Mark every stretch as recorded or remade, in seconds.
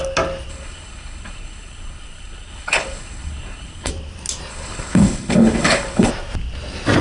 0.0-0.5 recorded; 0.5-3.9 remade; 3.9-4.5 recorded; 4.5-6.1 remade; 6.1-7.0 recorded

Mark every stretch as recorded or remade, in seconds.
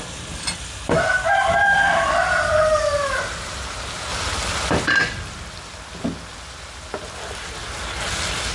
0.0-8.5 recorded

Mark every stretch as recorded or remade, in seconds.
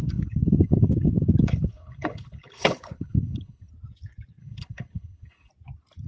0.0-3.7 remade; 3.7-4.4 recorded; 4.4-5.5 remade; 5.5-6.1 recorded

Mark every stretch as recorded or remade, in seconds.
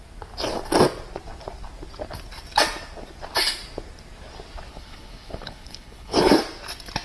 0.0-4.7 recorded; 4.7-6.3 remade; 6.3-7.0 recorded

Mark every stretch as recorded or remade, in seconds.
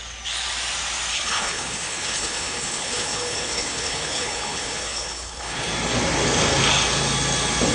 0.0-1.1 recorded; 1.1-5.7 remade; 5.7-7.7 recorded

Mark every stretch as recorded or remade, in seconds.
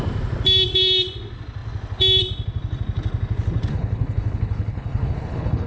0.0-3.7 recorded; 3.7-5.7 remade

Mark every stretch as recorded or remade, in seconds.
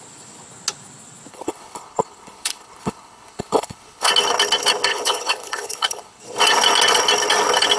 0.0-1.3 recorded; 1.3-4.1 remade; 4.1-4.9 recorded; 4.9-6.2 remade; 6.2-7.8 recorded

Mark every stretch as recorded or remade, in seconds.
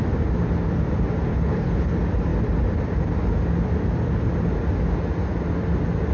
0.0-1.3 recorded; 1.3-1.9 remade; 1.9-6.1 recorded